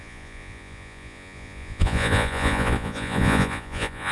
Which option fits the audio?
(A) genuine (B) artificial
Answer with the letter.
B